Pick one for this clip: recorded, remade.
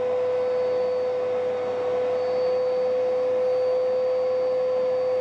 recorded